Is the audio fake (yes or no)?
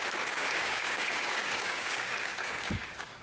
yes